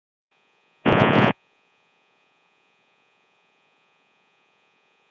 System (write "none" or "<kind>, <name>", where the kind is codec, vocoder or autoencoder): vocoder, Vocos